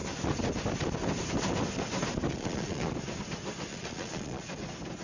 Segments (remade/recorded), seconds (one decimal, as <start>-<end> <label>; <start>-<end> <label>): 0.0-2.3 recorded; 2.3-2.9 remade; 2.9-3.7 recorded; 3.7-4.5 remade; 4.5-5.0 recorded